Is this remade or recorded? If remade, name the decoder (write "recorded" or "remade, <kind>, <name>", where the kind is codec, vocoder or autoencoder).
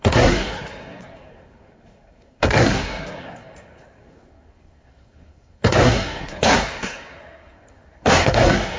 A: remade, codec, SNAC